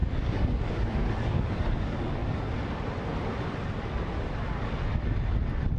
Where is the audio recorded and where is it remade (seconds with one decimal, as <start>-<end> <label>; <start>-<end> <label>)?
0.0-2.2 remade; 2.2-5.8 recorded

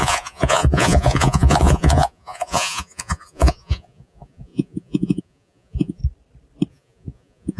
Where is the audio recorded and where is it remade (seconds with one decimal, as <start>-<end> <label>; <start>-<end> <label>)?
0.0-6.0 remade; 6.0-6.7 recorded; 6.7-7.6 remade